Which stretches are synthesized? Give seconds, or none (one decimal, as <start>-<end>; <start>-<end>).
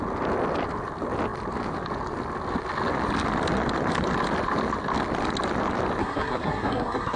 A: 6.0-7.2